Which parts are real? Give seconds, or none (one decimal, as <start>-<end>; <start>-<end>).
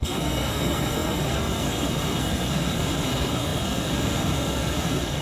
none